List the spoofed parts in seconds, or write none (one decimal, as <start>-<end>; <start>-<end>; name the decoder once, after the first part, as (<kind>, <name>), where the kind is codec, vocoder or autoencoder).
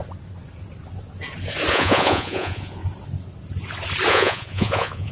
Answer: 1.7-2.8 (vocoder, Vocos); 4.1-5.1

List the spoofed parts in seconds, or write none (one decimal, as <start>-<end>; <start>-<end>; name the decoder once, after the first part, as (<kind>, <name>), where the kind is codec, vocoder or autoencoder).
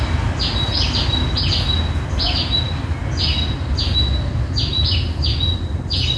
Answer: none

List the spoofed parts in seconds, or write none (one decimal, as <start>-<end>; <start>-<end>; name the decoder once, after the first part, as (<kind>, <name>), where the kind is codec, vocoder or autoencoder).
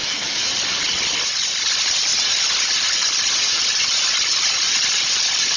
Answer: 0.0-0.5 (autoencoder, DAC-VAE)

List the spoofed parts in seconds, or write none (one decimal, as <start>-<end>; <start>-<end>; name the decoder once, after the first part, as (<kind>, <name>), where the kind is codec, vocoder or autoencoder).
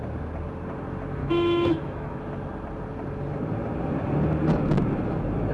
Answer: 1.2-2.2 (autoencoder, DAC-VAE)